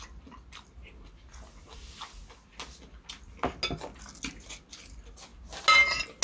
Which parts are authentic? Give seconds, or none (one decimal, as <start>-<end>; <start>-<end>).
0.0-6.2